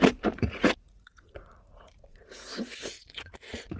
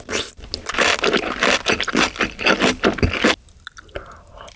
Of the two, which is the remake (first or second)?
first